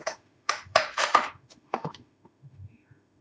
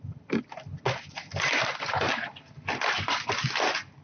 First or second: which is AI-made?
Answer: first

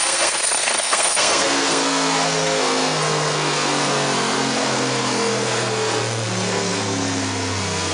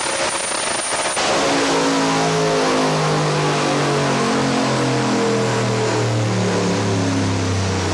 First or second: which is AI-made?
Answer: first